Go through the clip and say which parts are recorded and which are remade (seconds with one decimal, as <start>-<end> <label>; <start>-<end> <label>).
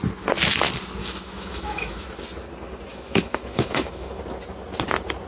0.0-1.0 recorded; 1.0-2.1 remade; 2.1-2.9 recorded; 2.9-4.1 remade; 4.1-5.3 recorded